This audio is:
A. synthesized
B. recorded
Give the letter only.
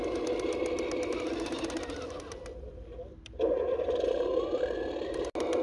B